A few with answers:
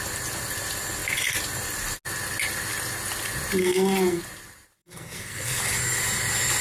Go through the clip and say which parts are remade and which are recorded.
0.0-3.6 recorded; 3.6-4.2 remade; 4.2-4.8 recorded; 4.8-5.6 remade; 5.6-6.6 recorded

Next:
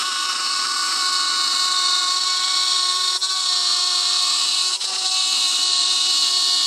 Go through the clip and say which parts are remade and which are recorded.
0.0-6.7 recorded

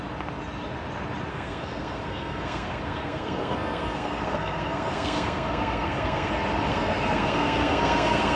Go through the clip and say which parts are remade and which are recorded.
0.0-1.3 recorded; 1.3-6.3 remade; 6.3-6.7 recorded; 6.7-8.4 remade

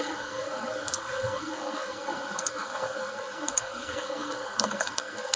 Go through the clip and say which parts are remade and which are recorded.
0.0-5.4 remade